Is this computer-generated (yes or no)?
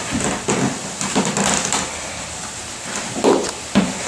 no